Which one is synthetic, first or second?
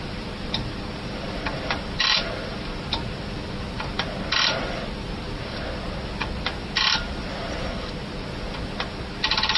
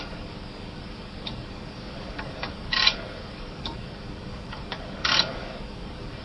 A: second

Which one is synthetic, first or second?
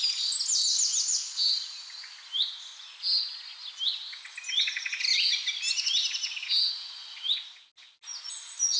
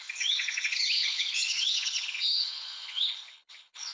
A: second